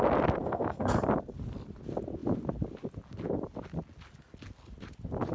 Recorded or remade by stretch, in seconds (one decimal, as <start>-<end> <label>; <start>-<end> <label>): 0.0-0.4 recorded; 0.4-1.0 remade; 1.0-5.3 recorded